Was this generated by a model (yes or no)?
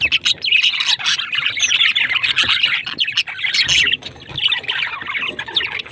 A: no